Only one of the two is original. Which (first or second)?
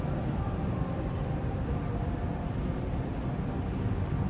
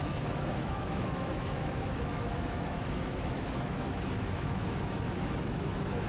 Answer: first